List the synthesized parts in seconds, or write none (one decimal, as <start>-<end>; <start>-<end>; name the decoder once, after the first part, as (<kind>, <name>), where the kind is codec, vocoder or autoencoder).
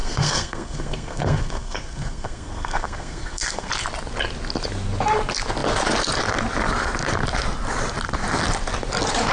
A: 0.0-3.7 (codec, SNAC)